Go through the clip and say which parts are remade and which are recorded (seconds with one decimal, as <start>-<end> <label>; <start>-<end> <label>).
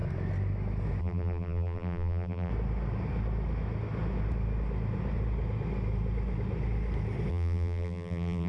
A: 0.0-1.0 recorded; 1.0-2.5 remade; 2.5-7.3 recorded; 7.3-8.5 remade